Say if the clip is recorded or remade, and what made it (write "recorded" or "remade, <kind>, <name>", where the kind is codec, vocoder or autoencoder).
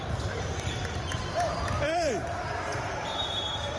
remade, vocoder, BigVGAN v2